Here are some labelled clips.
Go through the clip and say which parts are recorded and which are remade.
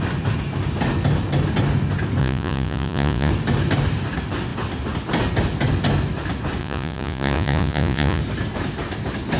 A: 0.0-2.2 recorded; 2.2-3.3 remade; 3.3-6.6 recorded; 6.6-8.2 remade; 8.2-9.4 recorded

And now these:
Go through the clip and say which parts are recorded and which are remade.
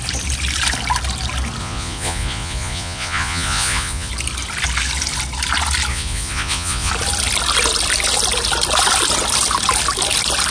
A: 0.0-1.6 recorded; 1.6-4.1 remade; 4.1-5.9 recorded; 5.9-6.9 remade; 6.9-10.5 recorded